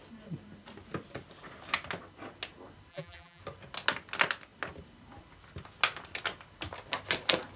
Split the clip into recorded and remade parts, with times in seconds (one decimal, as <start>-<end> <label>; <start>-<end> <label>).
0.0-2.9 recorded; 2.9-3.4 remade; 3.4-7.6 recorded